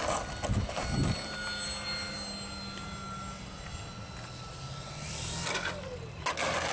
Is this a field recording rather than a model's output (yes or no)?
yes